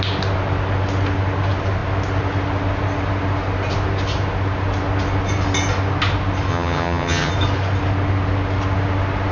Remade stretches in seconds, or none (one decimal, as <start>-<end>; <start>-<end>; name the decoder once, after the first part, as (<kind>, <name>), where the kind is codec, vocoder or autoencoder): 6.5-7.3 (vocoder, HiFi-GAN)